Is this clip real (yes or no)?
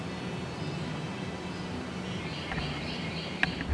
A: yes